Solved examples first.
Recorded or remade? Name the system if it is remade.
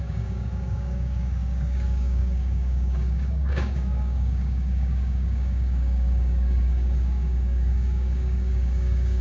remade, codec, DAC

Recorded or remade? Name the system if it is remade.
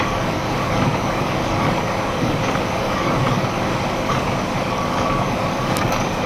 remade, codec, DAC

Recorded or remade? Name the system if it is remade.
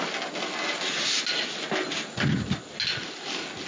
recorded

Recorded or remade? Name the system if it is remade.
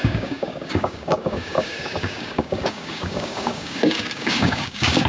remade, codec, DAC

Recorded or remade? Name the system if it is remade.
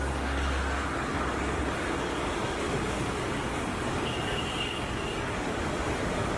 remade, codec, DAC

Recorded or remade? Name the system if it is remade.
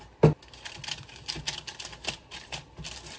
recorded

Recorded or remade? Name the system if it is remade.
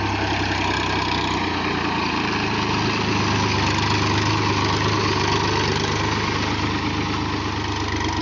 recorded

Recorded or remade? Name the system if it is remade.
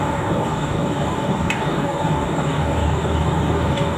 remade, codec, DAC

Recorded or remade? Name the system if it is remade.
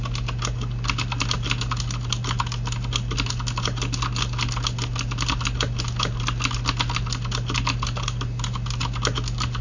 recorded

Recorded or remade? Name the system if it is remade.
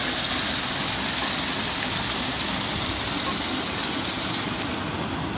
recorded